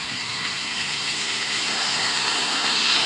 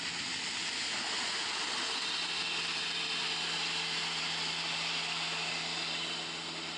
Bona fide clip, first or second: second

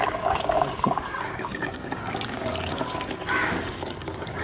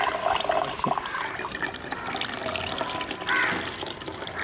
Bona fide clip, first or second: second